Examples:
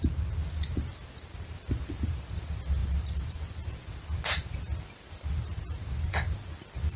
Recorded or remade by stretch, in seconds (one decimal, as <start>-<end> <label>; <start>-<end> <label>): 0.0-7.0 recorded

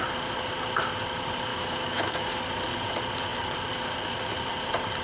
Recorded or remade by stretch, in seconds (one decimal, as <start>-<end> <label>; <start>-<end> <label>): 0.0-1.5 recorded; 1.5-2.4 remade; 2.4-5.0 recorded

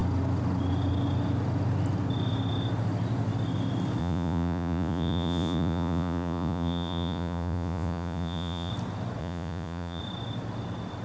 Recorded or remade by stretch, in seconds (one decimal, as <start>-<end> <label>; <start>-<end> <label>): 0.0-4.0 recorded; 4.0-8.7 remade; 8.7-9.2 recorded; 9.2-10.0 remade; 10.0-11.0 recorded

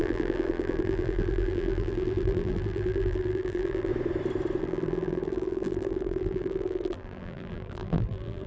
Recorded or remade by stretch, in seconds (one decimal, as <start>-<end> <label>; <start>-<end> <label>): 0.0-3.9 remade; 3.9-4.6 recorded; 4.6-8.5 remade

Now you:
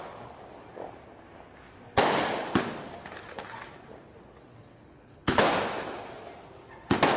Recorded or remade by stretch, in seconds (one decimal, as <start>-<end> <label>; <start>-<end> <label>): 0.0-4.5 recorded; 4.5-5.5 remade; 5.5-7.2 recorded

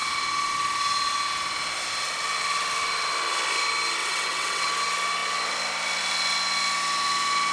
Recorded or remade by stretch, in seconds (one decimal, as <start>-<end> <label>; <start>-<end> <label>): 0.0-4.0 recorded; 4.0-4.7 remade; 4.7-7.5 recorded